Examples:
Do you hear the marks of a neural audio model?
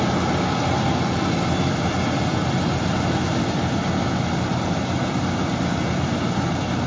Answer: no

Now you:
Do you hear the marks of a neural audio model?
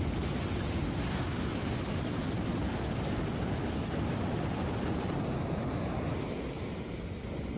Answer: no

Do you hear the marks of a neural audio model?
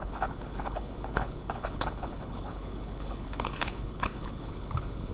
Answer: yes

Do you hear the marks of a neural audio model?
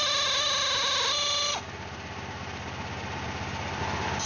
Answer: no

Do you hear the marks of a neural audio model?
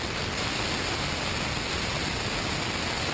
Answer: no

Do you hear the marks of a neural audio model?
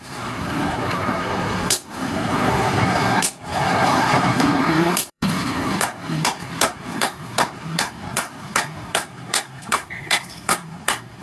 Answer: yes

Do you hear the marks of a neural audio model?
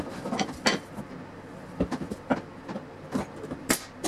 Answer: yes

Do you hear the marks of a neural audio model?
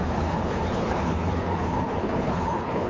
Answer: yes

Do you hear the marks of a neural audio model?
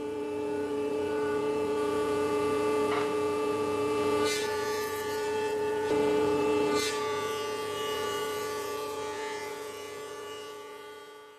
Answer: yes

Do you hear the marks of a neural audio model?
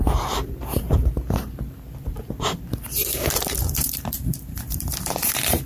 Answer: yes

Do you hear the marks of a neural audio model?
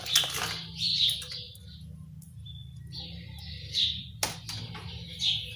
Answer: no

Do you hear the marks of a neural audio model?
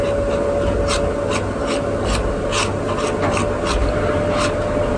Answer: no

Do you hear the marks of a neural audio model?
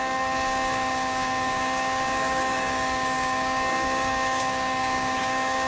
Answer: yes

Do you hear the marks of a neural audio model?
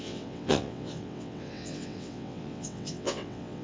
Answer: yes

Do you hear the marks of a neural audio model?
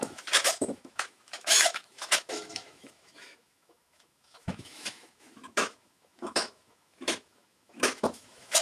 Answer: yes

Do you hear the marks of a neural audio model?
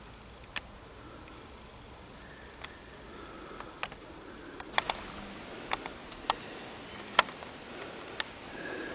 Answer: no